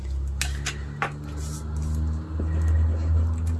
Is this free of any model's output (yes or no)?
yes